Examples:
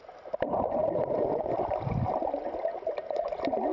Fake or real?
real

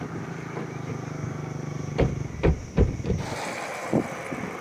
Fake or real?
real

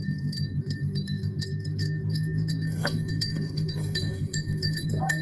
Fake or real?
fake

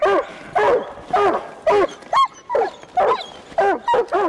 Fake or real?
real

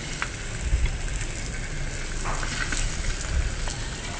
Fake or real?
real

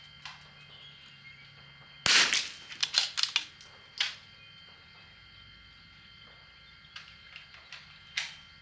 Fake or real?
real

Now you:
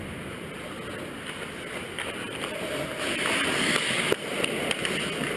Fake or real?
real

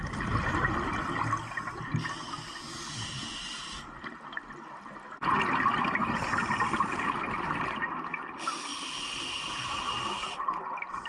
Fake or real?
real